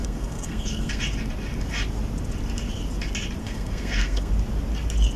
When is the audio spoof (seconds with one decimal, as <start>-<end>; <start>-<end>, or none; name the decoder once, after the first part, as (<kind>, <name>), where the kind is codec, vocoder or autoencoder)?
0.0-1.0 (codec, SNAC); 3.4-4.3